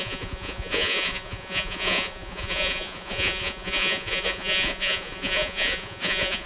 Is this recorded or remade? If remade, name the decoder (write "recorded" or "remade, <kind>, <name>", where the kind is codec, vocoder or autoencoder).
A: remade, vocoder, Vocos